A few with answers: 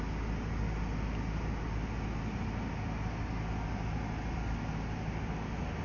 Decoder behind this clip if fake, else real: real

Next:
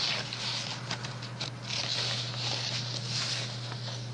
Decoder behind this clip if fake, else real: real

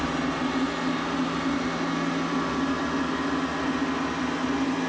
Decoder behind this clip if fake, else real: real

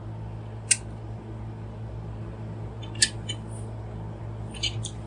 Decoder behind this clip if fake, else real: real